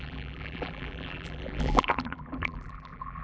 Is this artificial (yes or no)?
yes